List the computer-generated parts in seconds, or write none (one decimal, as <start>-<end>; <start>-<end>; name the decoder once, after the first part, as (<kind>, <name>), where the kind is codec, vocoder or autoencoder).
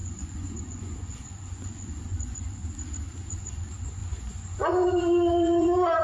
0.0-2.6 (vocoder, Vocos); 3.3-6.0